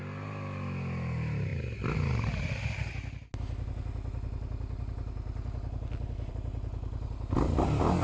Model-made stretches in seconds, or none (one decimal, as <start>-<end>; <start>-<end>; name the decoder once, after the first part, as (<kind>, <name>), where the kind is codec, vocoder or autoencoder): none